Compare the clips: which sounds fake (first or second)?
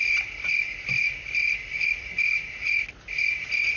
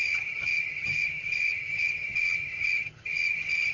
second